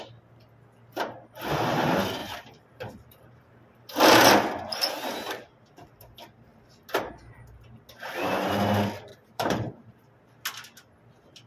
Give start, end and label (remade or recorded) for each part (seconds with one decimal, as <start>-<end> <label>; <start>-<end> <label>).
0.0-2.2 recorded; 2.2-4.3 remade; 4.3-9.1 recorded; 9.1-10.1 remade; 10.1-11.5 recorded